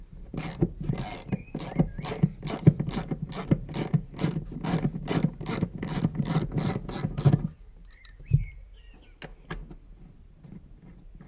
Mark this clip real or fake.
real